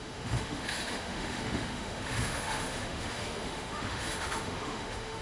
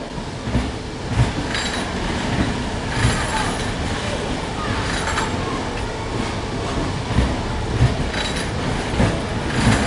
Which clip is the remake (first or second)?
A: first